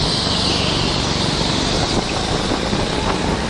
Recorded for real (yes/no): yes